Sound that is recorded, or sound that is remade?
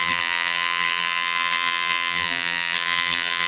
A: remade